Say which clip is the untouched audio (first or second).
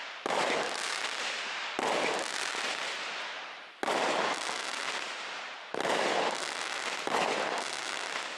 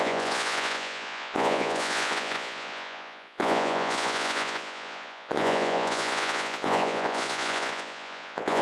first